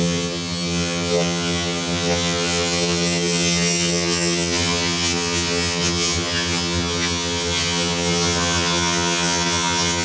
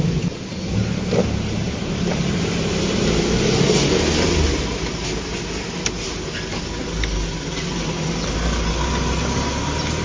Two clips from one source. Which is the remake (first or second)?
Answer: first